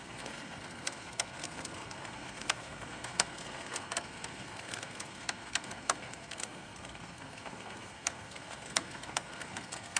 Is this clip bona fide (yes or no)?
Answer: no